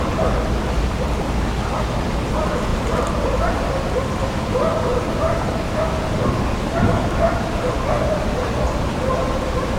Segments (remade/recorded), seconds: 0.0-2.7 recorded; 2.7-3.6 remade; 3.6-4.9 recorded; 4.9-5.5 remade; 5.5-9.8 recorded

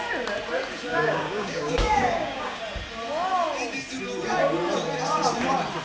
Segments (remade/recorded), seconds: 0.0-0.9 recorded; 0.9-2.6 remade; 2.6-5.8 recorded

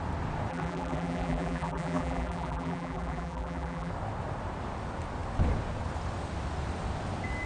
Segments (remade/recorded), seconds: 0.0-0.5 recorded; 0.5-3.9 remade; 3.9-7.5 recorded

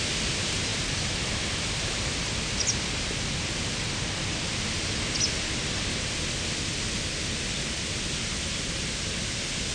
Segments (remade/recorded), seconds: 0.0-9.7 recorded